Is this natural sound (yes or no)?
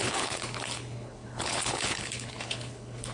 no